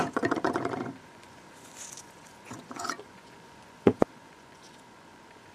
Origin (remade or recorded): remade